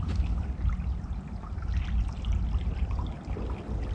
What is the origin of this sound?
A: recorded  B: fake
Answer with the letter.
A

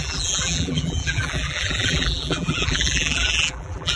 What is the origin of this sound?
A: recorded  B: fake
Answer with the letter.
B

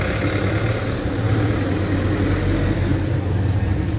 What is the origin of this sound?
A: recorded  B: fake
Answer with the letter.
A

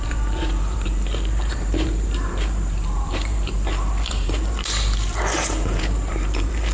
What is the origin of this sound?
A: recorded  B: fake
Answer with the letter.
B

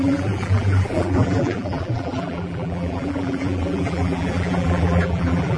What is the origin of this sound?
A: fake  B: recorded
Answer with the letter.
A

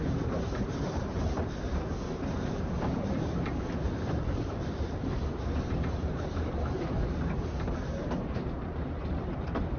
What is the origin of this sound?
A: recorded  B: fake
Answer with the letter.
B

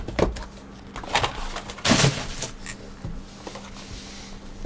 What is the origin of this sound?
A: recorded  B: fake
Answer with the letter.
A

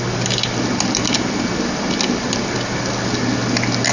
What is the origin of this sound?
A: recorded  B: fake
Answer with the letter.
A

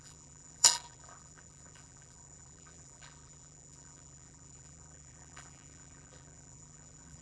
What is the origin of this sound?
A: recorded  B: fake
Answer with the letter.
B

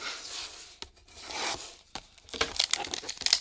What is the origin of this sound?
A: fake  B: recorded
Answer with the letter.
B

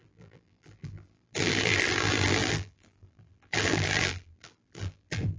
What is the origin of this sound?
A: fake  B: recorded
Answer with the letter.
A